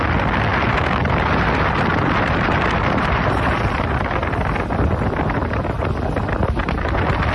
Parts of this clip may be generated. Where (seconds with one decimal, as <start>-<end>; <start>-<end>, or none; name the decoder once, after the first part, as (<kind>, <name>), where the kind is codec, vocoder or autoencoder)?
none